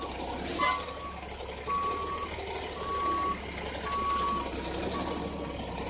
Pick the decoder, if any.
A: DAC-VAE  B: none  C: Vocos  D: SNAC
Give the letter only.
B